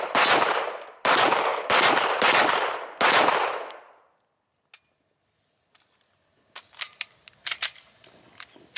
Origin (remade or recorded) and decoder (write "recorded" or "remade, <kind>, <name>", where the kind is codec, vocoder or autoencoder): recorded